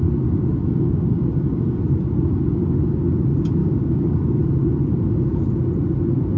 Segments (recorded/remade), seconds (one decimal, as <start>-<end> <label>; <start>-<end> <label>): 0.0-0.6 recorded; 0.6-1.8 remade; 1.8-3.6 recorded; 3.6-4.4 remade; 4.4-6.4 recorded